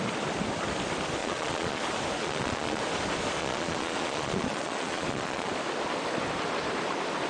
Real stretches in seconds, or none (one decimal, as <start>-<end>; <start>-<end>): 0.0-1.2; 1.8-2.2; 2.8-3.4; 5.5-7.3